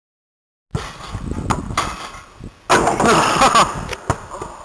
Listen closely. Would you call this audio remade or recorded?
recorded